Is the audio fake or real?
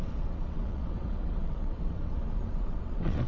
fake